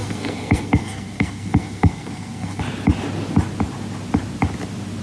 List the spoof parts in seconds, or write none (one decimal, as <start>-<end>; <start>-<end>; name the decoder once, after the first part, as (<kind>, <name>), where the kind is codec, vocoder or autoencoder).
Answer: 0.0-2.6 (codec, SNAC)